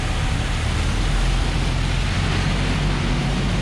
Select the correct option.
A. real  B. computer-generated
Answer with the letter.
A